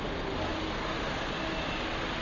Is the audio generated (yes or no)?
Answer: no